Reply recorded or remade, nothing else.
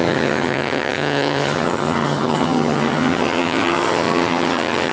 remade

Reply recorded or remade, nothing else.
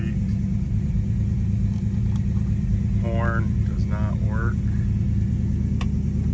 recorded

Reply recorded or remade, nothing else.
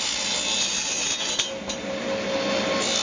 recorded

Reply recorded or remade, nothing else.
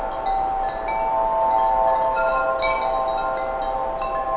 recorded